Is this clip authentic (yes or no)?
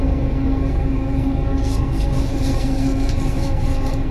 no